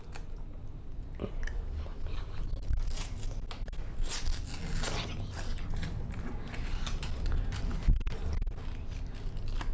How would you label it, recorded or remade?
recorded